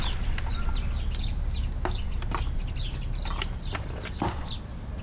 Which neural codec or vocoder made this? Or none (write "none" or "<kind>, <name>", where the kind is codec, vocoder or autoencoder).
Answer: none